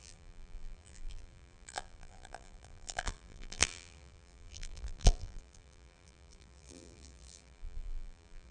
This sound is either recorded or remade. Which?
remade